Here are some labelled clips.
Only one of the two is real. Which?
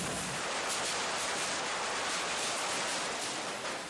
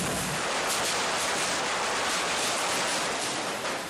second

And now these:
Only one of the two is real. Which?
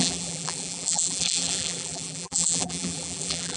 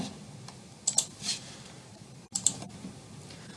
second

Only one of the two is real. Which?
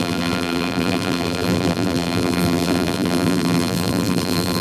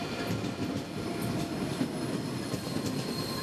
second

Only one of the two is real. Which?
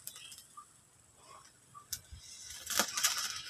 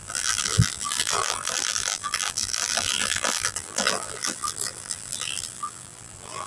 first